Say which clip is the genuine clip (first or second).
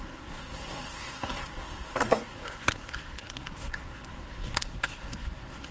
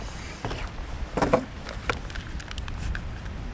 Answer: second